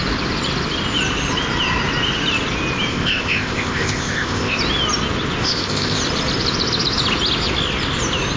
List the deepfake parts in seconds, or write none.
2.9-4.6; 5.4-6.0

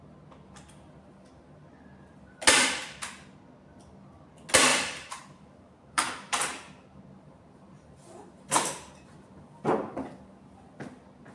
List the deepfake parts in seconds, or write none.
4.7-8.9

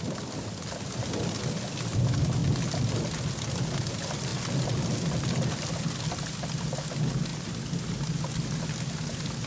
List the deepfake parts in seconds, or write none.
none

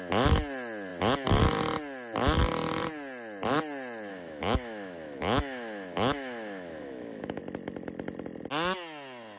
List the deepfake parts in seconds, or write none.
4.1-7.4

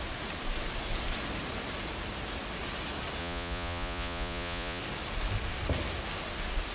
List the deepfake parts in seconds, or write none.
3.2-4.8

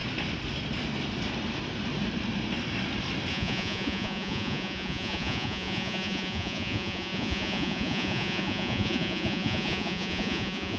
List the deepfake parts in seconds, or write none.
3.3-10.8